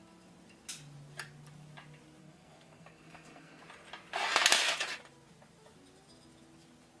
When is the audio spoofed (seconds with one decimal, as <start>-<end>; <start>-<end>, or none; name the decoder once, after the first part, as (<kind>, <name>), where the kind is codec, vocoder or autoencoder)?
2.2-3.6 (codec, SNAC)